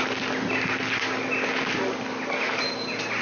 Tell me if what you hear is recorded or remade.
recorded